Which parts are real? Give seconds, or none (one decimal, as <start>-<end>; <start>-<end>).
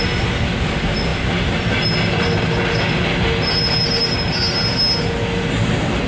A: 0.0-6.1